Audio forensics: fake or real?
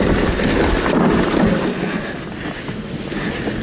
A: real